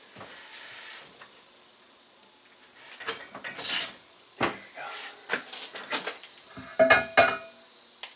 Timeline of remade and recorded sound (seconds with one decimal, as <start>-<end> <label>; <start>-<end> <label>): 0.0-8.2 recorded